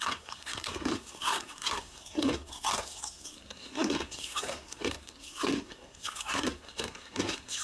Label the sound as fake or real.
fake